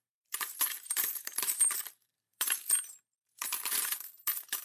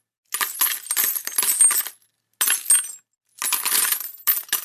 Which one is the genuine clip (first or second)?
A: second